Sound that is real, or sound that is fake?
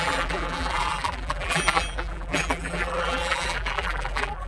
fake